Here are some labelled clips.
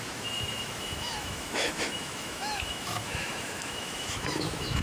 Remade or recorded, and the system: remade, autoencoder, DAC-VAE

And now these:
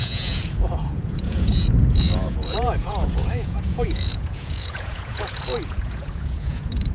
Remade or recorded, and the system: remade, vocoder, Vocos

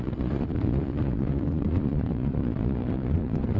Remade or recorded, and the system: remade, vocoder, Vocos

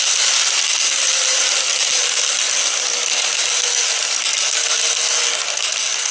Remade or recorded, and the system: recorded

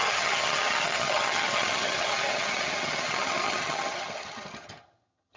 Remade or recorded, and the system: remade, vocoder, HiFi-GAN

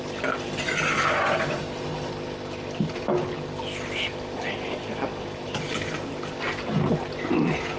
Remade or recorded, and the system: recorded